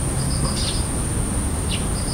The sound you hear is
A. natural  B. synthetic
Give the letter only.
A